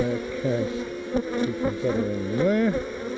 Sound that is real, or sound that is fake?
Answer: real